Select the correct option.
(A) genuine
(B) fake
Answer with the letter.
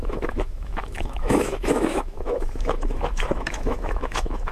B